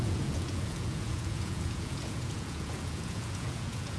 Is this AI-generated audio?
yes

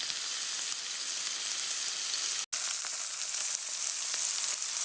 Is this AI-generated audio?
no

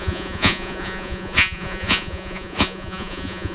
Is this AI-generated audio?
yes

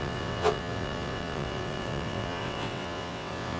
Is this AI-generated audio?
yes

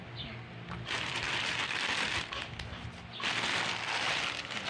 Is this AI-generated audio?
no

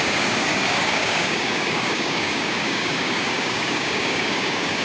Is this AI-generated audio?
yes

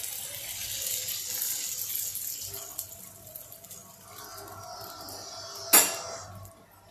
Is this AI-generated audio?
no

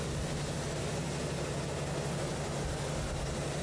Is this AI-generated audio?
no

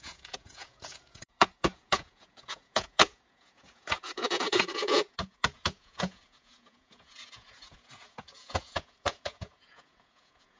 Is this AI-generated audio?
yes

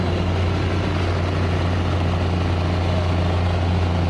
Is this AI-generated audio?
no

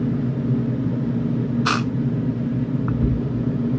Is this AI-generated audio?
no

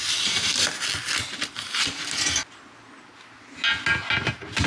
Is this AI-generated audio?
no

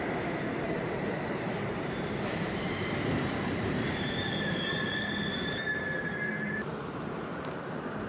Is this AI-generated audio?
yes